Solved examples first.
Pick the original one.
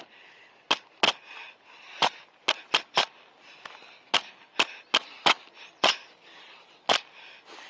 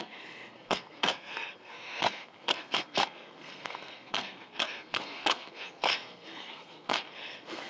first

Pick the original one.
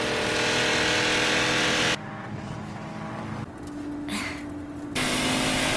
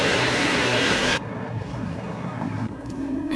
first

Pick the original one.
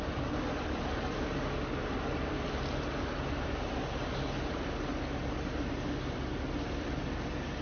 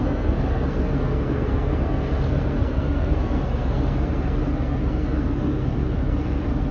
first